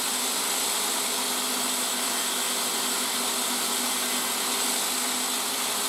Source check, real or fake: real